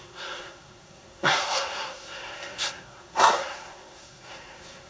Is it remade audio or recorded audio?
remade